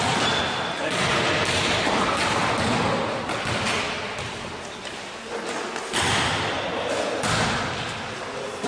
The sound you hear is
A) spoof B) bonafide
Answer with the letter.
B